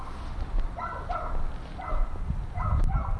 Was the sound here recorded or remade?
recorded